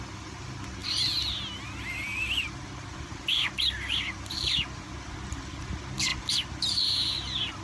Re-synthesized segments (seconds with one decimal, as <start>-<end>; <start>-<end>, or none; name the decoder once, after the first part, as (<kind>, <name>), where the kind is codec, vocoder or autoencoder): none